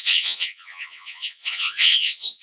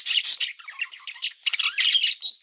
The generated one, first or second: first